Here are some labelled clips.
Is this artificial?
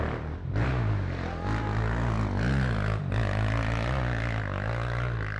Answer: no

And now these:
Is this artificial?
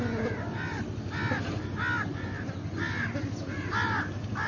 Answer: no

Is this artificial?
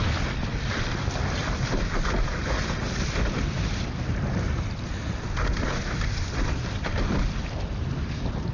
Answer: no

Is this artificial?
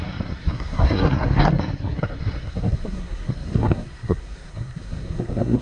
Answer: yes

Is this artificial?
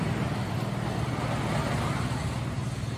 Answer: no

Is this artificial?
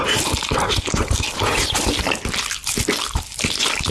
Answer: no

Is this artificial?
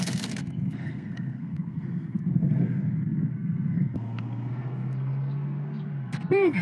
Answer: yes